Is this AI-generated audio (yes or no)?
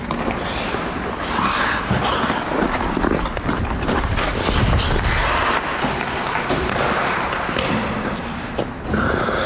no